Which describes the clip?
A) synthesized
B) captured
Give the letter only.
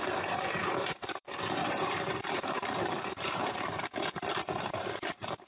A